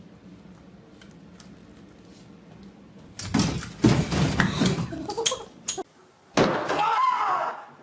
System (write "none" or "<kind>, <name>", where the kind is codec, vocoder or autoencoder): none